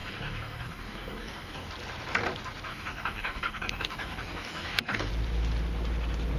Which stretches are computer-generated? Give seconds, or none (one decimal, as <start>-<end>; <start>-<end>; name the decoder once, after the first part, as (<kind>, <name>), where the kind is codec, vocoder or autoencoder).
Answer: 0.0-1.7 (codec, DAC); 2.7-5.1